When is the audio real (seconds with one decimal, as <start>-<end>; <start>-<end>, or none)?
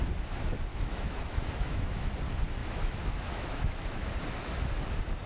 0.0-0.7; 2.1-2.6; 4.1-5.3